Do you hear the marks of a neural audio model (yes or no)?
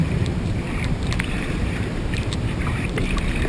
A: yes